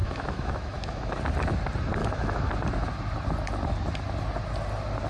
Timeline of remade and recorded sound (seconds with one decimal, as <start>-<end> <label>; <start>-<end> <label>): 0.0-1.2 remade; 1.2-2.0 recorded; 2.0-2.5 remade; 2.5-5.1 recorded